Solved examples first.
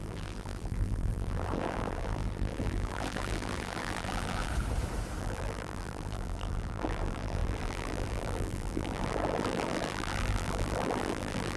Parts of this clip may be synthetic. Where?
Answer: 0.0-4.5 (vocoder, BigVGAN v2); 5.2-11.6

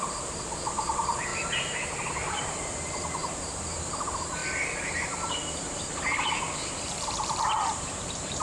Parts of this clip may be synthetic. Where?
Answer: 0.0-1.3 (vocoder, BigVGAN v2); 2.1-4.4; 5.3-8.4

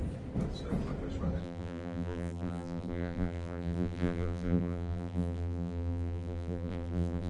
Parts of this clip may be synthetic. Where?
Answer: 1.4-7.3 (vocoder, BigVGAN v2)